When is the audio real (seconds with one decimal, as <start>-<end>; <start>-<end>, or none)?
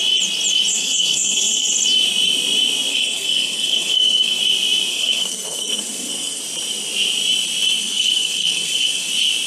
0.0-0.7; 1.7-2.9; 4.4-4.9; 6.4-7.8; 9.1-9.5